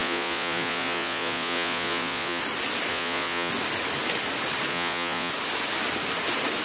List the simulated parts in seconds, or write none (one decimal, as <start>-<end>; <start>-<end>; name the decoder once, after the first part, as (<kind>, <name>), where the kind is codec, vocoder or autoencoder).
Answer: 0.0-2.4 (vocoder, Vocos); 2.9-3.5; 4.7-5.3